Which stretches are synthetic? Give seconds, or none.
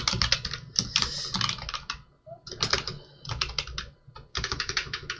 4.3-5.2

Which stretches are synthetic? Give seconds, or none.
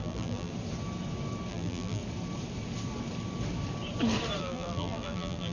0.0-0.5; 1.5-2.0; 4.4-5.5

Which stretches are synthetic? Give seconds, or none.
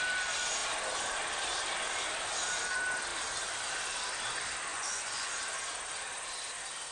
4.7-5.3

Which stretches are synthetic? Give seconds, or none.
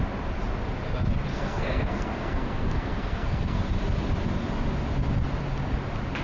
1.3-3.6